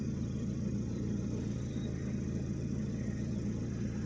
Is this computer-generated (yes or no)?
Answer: no